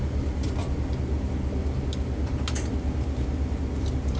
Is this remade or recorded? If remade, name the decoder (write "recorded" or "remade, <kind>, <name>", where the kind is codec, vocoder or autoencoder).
recorded